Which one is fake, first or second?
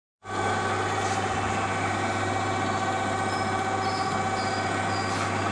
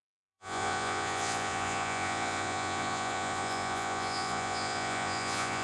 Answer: second